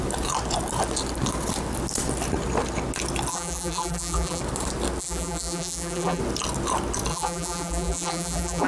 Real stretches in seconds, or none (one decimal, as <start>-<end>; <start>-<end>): 0.0-3.3; 4.4-5.0; 6.2-7.1